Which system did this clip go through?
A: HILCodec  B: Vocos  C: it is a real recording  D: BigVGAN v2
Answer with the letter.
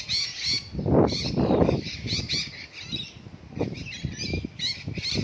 C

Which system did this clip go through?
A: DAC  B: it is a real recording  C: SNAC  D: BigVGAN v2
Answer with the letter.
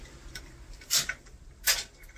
D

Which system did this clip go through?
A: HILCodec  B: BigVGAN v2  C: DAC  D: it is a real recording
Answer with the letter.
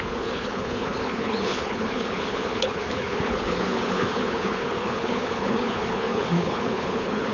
A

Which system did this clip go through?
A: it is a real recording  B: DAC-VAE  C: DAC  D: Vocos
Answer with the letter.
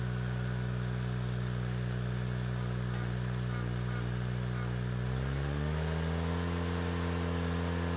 A